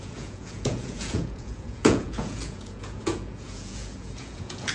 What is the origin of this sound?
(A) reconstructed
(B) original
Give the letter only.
A